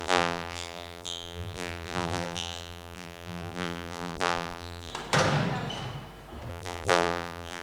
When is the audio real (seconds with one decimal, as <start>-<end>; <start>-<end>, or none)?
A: 4.9-6.5